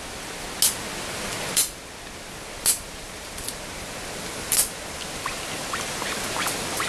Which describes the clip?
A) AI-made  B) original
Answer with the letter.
B